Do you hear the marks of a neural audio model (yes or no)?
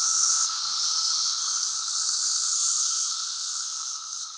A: yes